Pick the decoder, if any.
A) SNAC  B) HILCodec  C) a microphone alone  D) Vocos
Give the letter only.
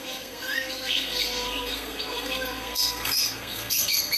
A